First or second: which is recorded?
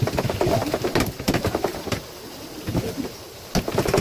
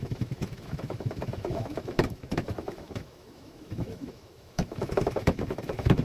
first